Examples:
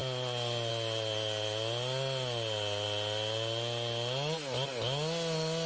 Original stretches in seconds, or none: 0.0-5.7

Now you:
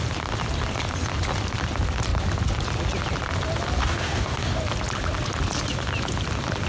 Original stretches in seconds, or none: 0.0-3.8; 4.6-6.7

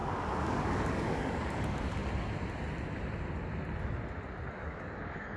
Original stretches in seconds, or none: 2.0-4.5

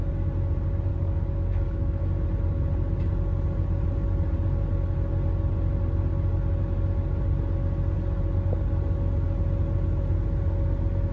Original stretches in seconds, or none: 0.0-0.9; 2.0-11.1

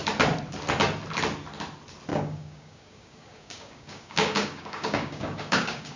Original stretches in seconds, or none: 0.0-2.1

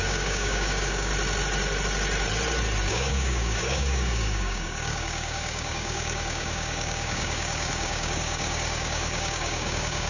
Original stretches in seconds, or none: 1.1-2.9

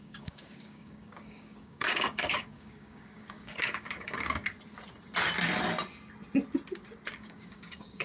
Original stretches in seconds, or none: 4.4-7.1

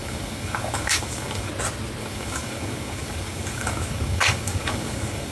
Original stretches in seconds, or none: 1.5-2.0